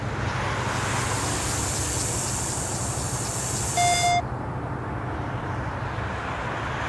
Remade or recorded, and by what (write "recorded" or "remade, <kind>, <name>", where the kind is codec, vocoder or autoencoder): recorded